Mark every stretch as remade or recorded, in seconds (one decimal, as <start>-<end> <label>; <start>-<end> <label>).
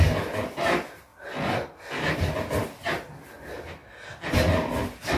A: 0.0-5.2 recorded